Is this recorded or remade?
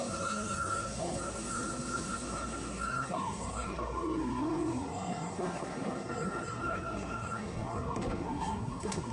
remade